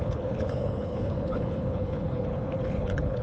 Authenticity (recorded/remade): remade